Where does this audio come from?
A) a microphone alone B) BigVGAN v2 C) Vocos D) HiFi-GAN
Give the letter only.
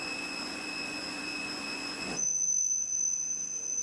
C